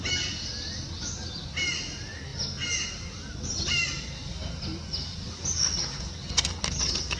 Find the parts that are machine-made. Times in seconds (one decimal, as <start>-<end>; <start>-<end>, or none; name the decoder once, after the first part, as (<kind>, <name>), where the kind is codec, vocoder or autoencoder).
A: none